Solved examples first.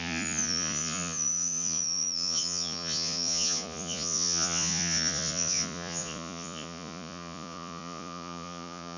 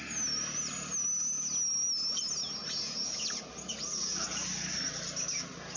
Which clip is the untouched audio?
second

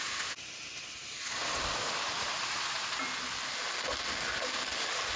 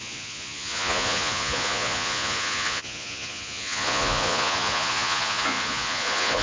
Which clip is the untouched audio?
first